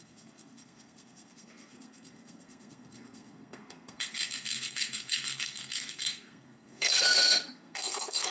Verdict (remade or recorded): remade